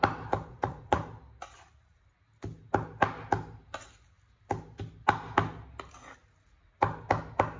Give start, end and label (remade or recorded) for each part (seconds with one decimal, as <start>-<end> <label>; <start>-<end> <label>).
0.0-0.5 recorded; 0.5-1.0 remade; 1.0-7.6 recorded